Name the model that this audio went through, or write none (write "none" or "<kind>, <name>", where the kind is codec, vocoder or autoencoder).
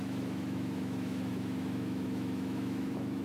autoencoder, DAC-VAE